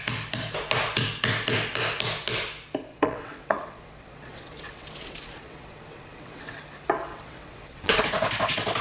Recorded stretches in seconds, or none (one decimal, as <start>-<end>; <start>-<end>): 0.0-2.9; 6.6-7.1; 8.0-8.8